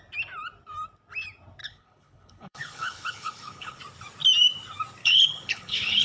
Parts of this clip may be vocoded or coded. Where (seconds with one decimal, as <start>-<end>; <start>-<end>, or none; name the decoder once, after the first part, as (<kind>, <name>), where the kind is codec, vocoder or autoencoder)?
1.6-3.8 (codec, HILCodec); 5.0-6.0